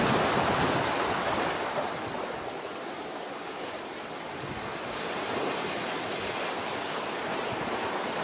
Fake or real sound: real